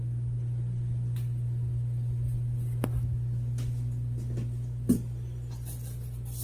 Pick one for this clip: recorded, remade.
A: recorded